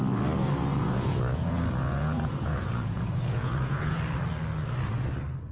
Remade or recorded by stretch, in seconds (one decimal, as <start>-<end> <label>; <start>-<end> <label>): 0.0-0.7 recorded; 0.7-4.0 remade; 4.0-5.5 recorded